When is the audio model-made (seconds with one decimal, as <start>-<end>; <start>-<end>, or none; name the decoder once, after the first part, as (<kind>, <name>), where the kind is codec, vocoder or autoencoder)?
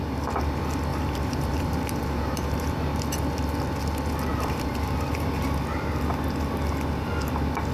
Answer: 0.9-2.7 (vocoder, BigVGAN v2); 4.3-5.6